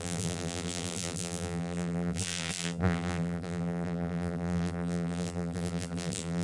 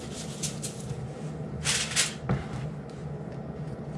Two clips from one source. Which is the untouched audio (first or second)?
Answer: second